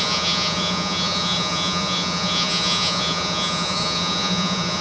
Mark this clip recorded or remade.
remade